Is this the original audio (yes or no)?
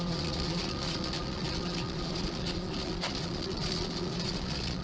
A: no